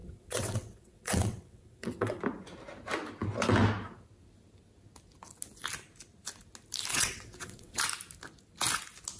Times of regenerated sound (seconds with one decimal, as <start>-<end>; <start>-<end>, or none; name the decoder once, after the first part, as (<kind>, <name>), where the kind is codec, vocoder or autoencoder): 0.0-2.2 (vocoder, WaveNeXt); 6.9-7.8

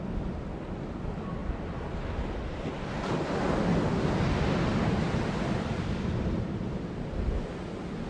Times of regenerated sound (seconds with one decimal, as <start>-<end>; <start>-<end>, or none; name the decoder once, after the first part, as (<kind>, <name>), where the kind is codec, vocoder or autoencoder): none

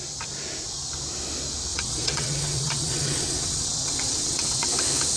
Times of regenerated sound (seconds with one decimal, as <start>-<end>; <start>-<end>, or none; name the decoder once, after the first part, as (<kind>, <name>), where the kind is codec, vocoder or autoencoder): 1.7-4.7 (vocoder, WaveNeXt)

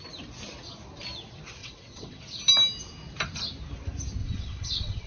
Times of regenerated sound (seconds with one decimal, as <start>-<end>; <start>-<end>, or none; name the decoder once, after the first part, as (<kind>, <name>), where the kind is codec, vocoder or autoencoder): 1.6-2.2 (vocoder, WaveNeXt); 4.2-5.1

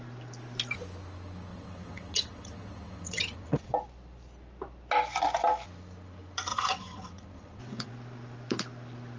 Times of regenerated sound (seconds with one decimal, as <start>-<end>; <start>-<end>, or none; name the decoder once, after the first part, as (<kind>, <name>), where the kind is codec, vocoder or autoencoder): 1.5-3.7 (vocoder, WaveNeXt); 6.5-7.9

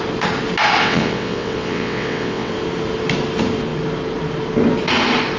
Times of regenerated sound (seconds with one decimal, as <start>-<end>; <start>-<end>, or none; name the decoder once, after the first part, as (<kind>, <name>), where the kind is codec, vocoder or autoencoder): 0.8-2.5 (vocoder, WaveNeXt)

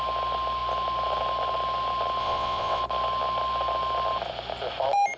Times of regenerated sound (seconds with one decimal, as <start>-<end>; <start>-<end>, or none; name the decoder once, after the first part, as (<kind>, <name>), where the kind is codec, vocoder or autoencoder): 2.2-2.8 (vocoder, WaveNeXt)